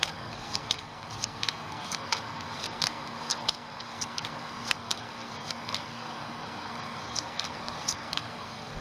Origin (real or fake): fake